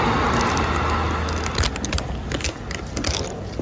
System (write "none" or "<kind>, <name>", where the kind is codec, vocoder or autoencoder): none